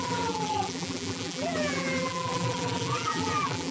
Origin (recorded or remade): remade